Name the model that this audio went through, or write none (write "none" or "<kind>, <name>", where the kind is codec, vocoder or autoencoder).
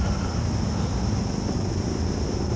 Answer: none